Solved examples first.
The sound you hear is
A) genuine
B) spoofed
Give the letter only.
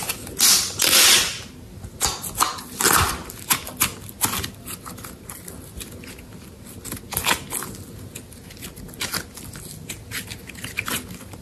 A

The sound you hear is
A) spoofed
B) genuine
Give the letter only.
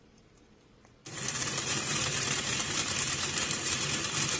A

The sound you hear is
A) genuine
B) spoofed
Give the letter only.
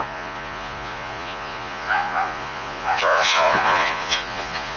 B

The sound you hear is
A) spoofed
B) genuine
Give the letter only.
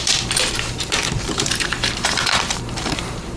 A